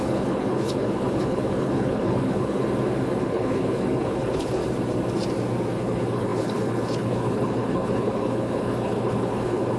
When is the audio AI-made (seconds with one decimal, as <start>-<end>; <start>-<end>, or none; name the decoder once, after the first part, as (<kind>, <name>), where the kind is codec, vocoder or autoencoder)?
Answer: 0.0-2.6 (codec, HILCodec); 3.2-4.6; 5.7-9.8